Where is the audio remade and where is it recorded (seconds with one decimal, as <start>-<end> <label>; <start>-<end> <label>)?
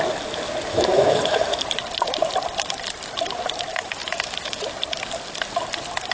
0.0-0.7 recorded; 0.7-1.5 remade; 1.5-3.7 recorded; 3.7-4.7 remade; 4.7-6.1 recorded